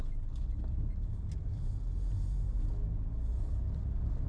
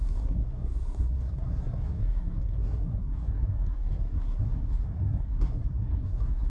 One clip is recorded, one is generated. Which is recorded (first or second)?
first